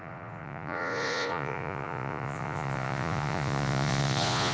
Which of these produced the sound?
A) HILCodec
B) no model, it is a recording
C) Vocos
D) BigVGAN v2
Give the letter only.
C